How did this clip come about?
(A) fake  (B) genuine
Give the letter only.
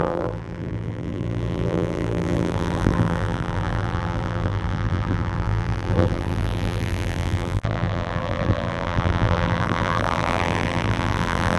A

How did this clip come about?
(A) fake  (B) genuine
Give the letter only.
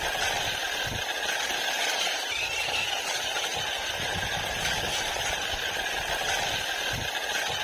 B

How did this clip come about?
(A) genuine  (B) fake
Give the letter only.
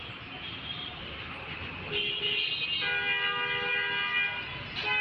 A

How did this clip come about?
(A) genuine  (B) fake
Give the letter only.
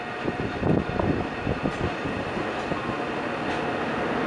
A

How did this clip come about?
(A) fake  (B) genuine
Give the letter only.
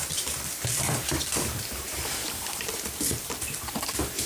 A